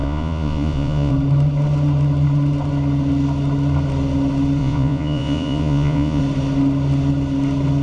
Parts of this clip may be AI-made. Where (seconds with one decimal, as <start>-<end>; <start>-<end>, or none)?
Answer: 0.0-1.1; 4.6-6.2